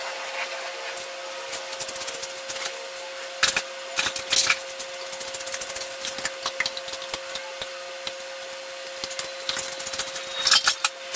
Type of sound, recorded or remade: recorded